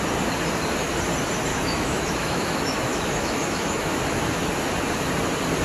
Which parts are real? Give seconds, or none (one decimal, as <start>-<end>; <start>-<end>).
0.0-1.5; 4.2-5.6